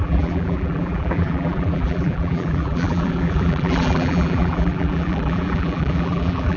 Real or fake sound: fake